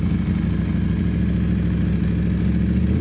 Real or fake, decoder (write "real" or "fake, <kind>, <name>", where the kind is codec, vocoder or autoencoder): real